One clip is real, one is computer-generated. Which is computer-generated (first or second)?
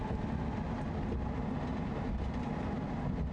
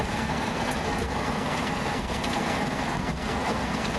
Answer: second